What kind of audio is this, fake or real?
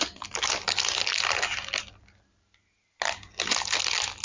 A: real